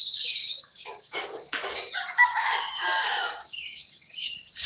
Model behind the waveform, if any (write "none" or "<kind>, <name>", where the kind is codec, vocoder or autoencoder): codec, DAC